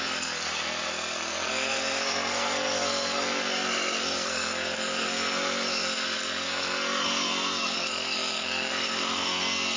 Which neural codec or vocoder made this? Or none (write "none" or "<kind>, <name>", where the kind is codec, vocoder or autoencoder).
codec, SNAC